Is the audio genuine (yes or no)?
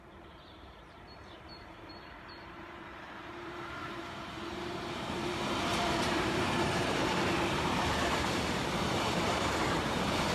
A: no